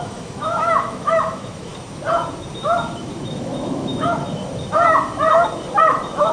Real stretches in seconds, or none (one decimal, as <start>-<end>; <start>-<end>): 1.7-3.0; 4.4-5.8